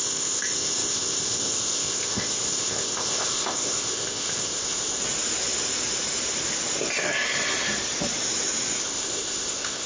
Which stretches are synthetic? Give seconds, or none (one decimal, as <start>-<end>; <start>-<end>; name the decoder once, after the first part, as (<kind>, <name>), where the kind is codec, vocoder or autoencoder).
0.0-5.0 (codec, ZipCodec); 8.8-9.9